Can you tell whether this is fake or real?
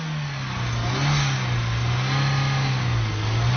real